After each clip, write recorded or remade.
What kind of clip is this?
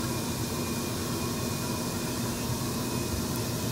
recorded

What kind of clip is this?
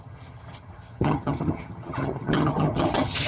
remade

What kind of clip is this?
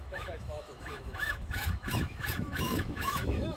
remade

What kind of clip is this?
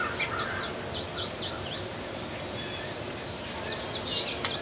recorded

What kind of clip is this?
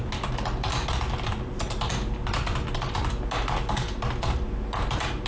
recorded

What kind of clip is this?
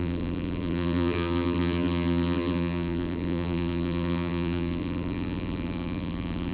remade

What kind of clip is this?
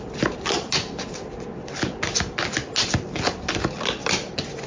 recorded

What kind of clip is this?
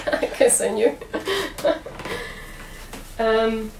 recorded